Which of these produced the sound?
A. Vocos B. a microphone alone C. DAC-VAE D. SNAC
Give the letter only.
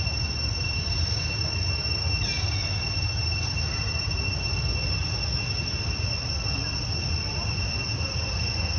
B